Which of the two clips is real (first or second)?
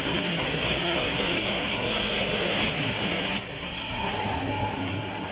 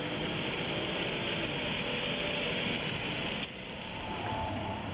second